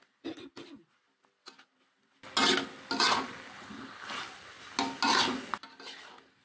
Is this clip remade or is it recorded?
recorded